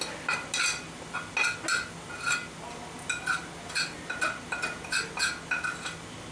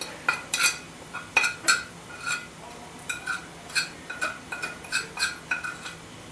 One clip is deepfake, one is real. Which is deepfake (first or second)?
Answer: second